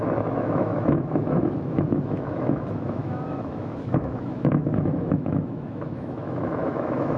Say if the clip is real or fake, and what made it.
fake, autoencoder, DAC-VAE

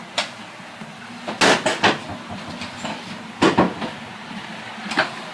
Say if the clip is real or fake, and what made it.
real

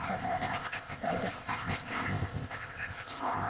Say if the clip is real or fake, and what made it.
fake, codec, ZipCodec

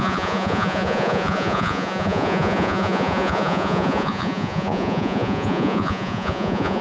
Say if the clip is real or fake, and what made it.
fake, vocoder, Vocos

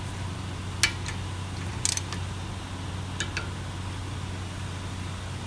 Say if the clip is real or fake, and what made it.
real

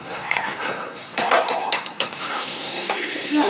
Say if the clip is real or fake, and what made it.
fake, codec, SNAC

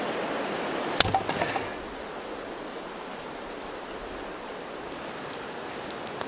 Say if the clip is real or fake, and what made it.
real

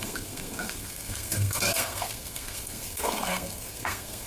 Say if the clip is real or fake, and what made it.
fake, codec, SNAC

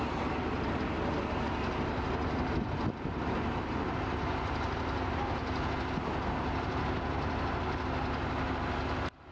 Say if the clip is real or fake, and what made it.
real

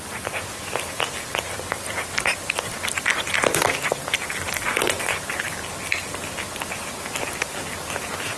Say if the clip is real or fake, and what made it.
real